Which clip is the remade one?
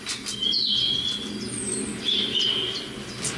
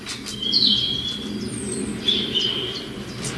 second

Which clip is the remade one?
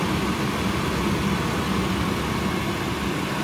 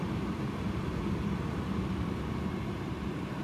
second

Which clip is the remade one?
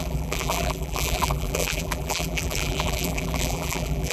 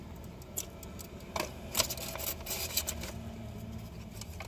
first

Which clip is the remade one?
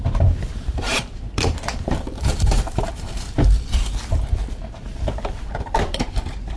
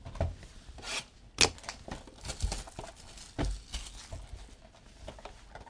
first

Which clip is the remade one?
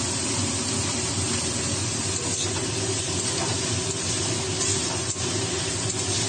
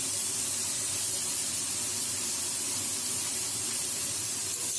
second